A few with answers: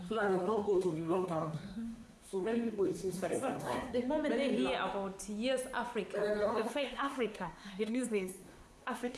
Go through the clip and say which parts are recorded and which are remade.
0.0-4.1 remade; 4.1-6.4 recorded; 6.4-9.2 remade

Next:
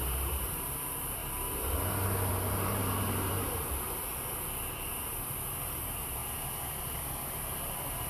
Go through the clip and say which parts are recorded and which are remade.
0.0-1.2 remade; 1.2-2.3 recorded; 2.3-2.8 remade; 2.8-3.3 recorded; 3.3-4.1 remade; 4.1-5.3 recorded; 5.3-6.2 remade; 6.2-6.8 recorded; 6.8-8.1 remade

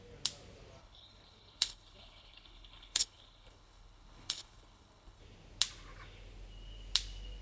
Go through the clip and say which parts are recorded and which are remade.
0.0-0.8 recorded; 0.8-5.2 remade; 5.2-7.4 recorded

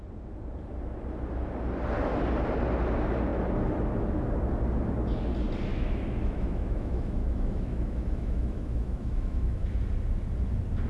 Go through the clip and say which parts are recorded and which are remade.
0.0-5.7 recorded; 5.7-9.8 remade; 9.8-10.9 recorded

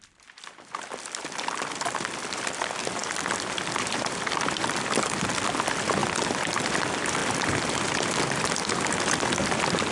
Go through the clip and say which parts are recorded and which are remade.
0.0-7.2 remade; 7.2-8.7 recorded; 8.7-9.9 remade

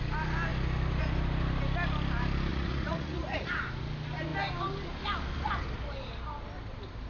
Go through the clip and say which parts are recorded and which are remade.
0.0-2.5 recorded; 2.5-3.6 remade; 3.6-7.1 recorded